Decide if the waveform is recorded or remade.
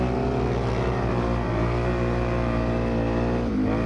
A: recorded